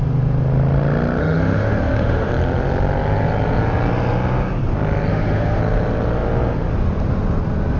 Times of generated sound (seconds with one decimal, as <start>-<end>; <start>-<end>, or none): 1.2-2.3; 5.1-5.6